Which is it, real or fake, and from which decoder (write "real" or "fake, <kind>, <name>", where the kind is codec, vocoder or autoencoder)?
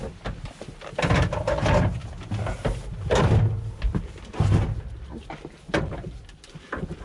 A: real